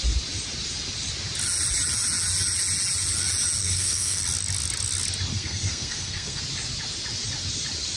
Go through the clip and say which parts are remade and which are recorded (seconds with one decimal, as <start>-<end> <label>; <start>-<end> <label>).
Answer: 0.0-3.6 recorded; 3.6-4.2 remade; 4.2-5.3 recorded; 5.3-6.4 remade; 6.4-8.0 recorded